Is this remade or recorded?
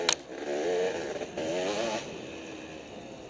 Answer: recorded